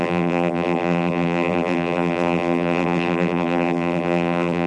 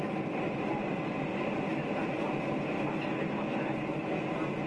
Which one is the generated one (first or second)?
first